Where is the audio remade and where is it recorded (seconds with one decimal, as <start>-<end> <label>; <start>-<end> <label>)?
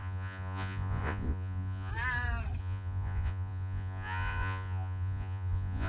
0.0-1.9 remade; 1.9-2.6 recorded; 2.6-5.9 remade